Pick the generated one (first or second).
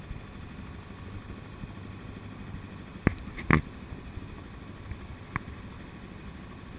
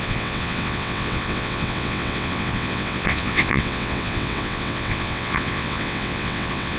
second